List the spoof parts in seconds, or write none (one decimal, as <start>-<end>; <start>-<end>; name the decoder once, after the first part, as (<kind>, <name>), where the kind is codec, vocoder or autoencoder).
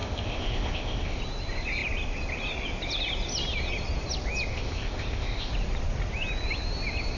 0.0-1.2 (codec, ZipCodec); 4.5-5.5